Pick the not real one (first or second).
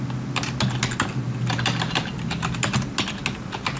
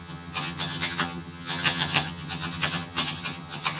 second